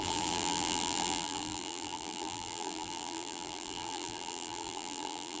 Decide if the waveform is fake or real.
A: fake